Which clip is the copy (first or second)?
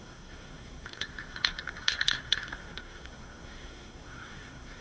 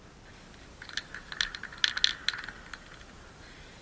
first